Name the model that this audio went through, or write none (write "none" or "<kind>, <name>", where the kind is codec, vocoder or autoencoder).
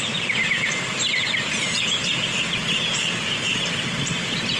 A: vocoder, BigVGAN v2